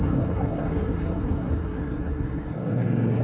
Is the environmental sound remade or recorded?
remade